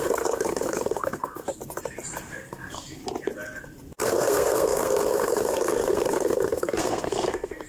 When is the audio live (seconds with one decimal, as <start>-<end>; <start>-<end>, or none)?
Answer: 1.6-2.3; 3.0-4.0